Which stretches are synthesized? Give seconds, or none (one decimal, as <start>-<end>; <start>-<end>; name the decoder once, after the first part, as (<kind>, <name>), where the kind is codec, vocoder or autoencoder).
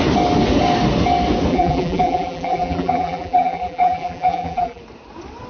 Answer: 1.5-4.8 (vocoder, BigVGAN v2)